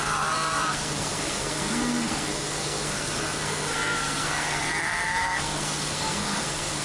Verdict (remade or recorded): remade